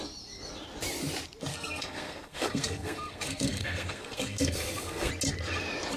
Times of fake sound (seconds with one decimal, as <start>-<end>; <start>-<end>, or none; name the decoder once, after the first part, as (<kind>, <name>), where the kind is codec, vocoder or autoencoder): 1.5-5.1 (codec, SNAC)